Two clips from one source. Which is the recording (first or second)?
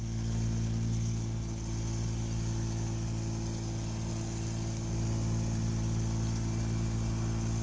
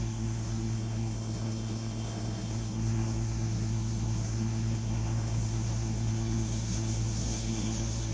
first